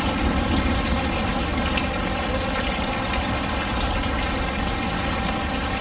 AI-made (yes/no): no